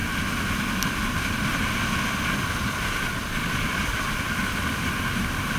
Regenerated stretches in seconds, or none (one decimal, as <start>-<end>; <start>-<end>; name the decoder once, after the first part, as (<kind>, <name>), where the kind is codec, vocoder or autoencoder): none